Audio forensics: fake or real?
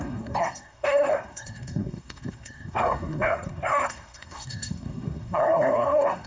fake